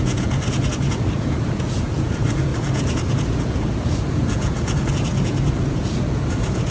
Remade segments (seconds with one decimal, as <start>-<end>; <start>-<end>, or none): 0.0-6.7